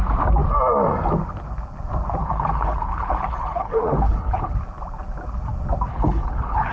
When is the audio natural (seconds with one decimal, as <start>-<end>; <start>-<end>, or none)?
0.0-2.2; 4.5-5.9